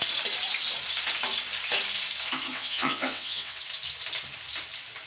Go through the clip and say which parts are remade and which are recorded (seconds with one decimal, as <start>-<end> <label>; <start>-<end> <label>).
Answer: 0.0-2.5 recorded; 2.5-3.6 remade; 3.6-5.1 recorded

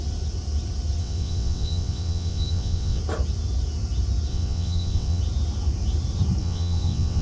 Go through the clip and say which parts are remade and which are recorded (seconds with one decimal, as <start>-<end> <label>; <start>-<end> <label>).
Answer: 0.0-1.0 recorded; 1.0-3.0 remade; 3.0-4.3 recorded; 4.3-5.2 remade; 5.2-6.4 recorded; 6.4-7.2 remade

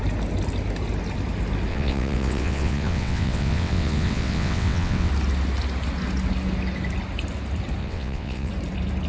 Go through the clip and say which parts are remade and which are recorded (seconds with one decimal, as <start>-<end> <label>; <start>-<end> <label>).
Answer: 0.0-1.7 recorded; 1.7-5.1 remade; 5.1-7.8 recorded; 7.8-8.5 remade; 8.5-9.1 recorded

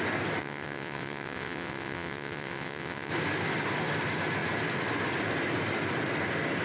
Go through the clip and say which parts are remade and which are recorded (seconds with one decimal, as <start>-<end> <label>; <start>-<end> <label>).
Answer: 0.0-0.4 recorded; 0.4-3.1 remade; 3.1-6.6 recorded